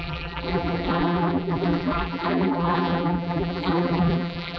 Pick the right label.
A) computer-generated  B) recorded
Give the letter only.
A